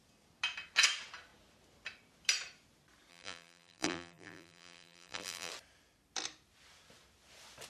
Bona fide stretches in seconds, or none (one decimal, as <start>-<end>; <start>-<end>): 0.0-3.1; 5.5-7.7